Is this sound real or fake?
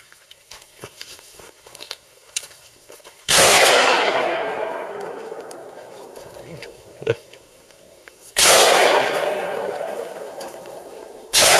fake